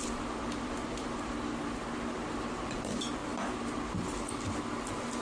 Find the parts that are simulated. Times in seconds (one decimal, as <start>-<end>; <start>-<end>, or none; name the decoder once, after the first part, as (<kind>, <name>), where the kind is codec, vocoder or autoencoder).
none